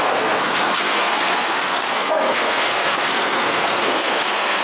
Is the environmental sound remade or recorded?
remade